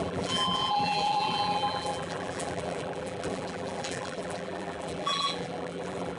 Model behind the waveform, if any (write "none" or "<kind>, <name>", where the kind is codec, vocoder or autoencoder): vocoder, BigVGAN v2